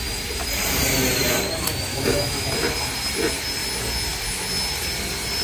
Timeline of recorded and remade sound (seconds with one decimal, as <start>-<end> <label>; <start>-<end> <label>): 0.0-1.9 recorded; 1.9-2.5 remade; 2.5-5.4 recorded